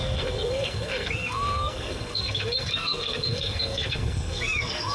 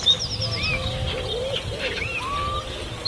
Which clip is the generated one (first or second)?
first